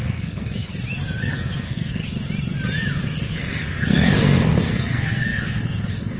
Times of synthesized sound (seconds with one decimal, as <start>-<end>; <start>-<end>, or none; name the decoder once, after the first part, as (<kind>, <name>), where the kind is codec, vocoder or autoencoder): 0.0-0.7 (codec, SNAC); 1.2-2.0; 3.2-6.2